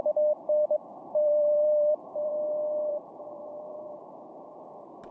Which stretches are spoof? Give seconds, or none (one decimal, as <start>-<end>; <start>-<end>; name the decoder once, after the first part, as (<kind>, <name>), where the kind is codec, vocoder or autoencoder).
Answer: 0.9-2.3 (vocoder, BigVGAN v2); 2.9-4.6